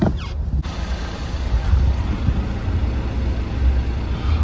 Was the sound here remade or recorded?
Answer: recorded